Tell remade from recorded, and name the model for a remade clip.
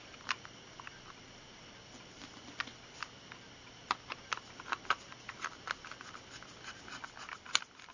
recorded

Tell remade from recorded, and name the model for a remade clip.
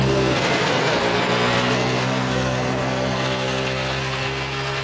remade, codec, SNAC